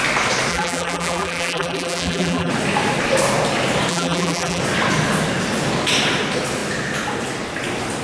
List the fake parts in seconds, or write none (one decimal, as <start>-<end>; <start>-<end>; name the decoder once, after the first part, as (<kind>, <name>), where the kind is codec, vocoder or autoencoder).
0.5-2.5 (vocoder, BigVGAN v2); 3.9-4.6